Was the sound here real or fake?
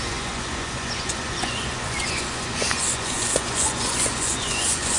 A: fake